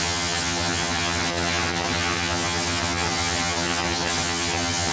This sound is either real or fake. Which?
fake